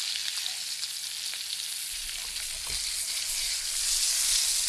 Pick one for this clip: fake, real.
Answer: real